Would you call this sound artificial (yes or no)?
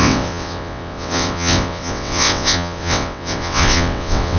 yes